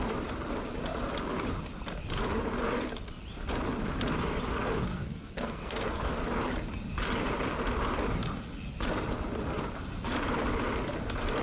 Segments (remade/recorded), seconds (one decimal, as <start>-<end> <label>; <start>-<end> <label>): 0.0-4.9 recorded; 4.9-6.1 remade; 6.1-11.4 recorded